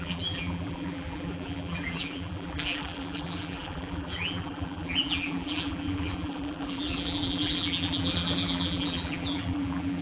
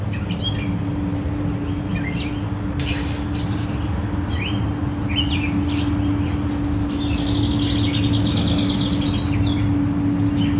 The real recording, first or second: second